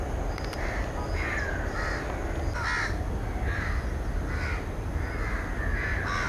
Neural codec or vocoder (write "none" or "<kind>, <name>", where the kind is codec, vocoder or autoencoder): none